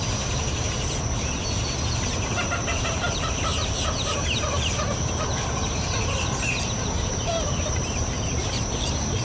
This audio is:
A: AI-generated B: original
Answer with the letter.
A